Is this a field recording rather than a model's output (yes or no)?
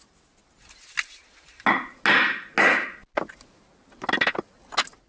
yes